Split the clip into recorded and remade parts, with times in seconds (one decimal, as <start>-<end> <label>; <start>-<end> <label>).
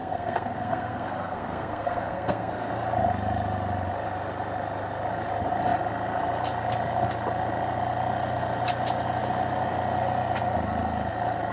0.0-2.7 remade; 2.7-11.5 recorded